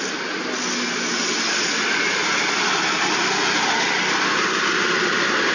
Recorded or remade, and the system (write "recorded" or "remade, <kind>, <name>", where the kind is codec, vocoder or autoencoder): recorded